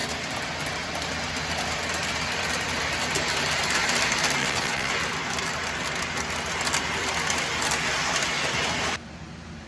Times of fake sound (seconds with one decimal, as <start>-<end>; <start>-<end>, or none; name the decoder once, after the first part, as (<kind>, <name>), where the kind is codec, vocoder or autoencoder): 4.4-4.9 (vocoder, WaveNeXt)